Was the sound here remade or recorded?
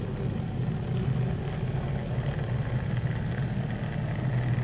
recorded